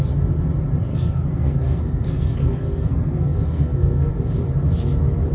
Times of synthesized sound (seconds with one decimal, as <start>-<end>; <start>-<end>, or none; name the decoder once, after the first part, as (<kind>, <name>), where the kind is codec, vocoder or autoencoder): 0.9-4.1 (codec, SNAC)